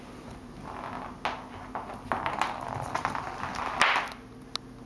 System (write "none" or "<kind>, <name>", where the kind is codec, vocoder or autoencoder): none